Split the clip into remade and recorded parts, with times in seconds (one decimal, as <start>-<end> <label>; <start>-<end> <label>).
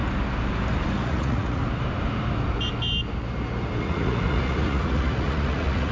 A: 0.0-0.9 recorded; 0.9-1.6 remade; 1.6-3.8 recorded; 3.8-5.9 remade